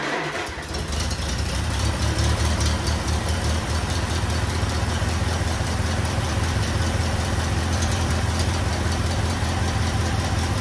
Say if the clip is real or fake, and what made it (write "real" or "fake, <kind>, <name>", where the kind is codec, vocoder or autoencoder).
fake, vocoder, BigVGAN v2